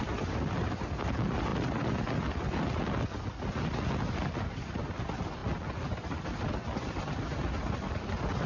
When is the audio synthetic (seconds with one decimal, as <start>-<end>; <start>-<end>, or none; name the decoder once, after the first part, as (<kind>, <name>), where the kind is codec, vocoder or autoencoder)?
none